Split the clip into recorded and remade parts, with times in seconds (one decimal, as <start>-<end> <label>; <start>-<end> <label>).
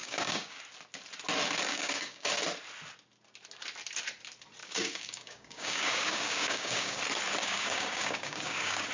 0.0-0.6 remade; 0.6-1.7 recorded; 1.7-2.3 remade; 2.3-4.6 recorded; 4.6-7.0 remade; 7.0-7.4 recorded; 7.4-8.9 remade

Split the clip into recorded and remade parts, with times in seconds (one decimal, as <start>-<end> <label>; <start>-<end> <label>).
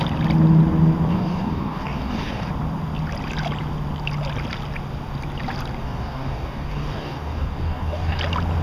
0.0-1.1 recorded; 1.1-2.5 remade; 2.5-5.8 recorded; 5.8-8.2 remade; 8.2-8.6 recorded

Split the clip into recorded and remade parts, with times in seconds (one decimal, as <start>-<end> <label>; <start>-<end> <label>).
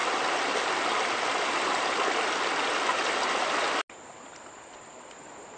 0.0-5.6 recorded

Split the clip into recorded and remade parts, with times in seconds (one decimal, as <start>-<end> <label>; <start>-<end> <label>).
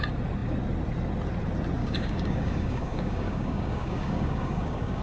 0.0-1.8 recorded; 1.8-5.0 remade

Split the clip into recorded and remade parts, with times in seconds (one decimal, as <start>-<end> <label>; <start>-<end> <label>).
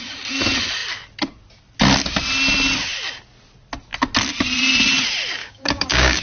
0.0-5.4 recorded; 5.4-6.2 remade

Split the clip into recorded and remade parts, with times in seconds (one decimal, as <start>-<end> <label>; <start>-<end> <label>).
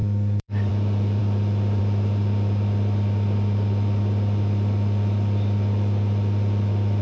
0.0-0.7 remade; 0.7-7.0 recorded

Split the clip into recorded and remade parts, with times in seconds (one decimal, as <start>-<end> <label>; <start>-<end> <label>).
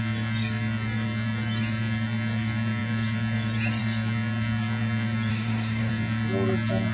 0.0-5.3 recorded; 5.3-5.9 remade; 5.9-6.9 recorded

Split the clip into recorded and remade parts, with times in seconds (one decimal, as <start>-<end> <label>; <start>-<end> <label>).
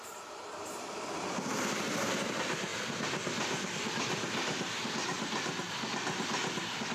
0.0-6.9 recorded